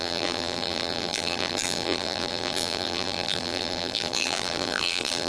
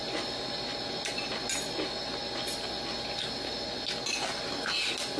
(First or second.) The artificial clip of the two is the first